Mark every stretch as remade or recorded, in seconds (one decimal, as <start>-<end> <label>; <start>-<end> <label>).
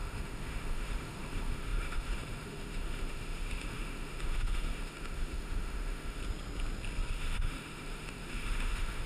0.0-6.2 remade; 6.2-7.1 recorded; 7.1-9.1 remade